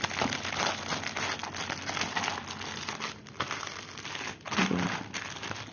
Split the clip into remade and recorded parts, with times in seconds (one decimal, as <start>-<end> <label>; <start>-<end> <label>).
0.0-5.7 recorded